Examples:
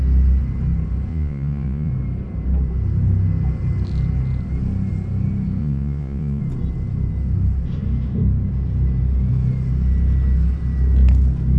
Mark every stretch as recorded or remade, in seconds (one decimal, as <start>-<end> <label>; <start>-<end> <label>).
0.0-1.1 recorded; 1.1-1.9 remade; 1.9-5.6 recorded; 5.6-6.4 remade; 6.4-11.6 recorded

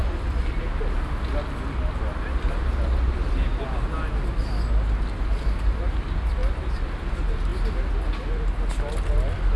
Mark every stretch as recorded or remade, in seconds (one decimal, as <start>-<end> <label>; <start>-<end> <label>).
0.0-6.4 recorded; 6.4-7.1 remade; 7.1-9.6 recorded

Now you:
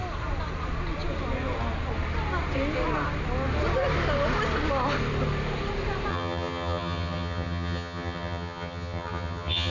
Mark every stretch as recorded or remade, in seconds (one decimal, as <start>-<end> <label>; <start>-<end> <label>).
0.0-6.1 recorded; 6.1-9.7 remade